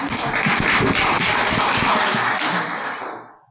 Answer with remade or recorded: recorded